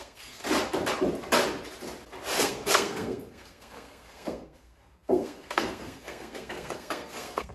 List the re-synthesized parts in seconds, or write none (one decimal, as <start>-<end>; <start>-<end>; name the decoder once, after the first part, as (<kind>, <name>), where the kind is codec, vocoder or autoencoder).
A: 0.0-0.4 (codec, SNAC); 2.4-7.5